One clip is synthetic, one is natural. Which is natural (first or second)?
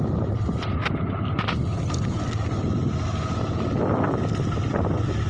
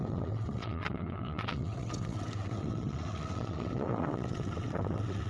first